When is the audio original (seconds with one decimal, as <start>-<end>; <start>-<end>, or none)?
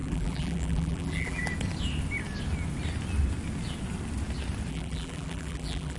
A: 1.5-4.7